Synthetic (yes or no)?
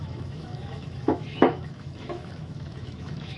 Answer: yes